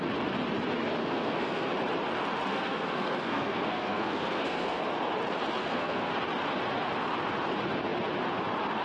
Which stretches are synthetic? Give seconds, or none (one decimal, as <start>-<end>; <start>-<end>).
1.0-1.7; 2.5-4.8; 5.6-6.1